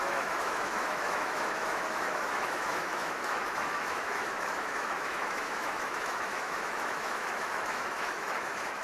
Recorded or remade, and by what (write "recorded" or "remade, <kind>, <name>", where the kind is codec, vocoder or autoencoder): remade, autoencoder, DAC-VAE